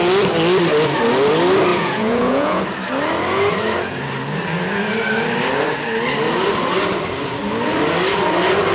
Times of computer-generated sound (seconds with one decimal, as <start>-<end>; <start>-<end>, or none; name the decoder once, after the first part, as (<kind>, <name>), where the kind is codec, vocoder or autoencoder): 1.7-2.6 (vocoder, Vocos)